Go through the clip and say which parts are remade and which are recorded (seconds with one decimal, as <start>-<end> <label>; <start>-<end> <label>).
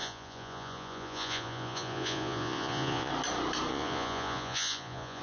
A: 0.0-3.1 remade; 3.1-3.7 recorded; 3.7-5.2 remade